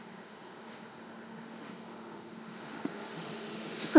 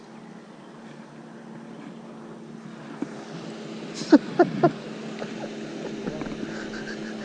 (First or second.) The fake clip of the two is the first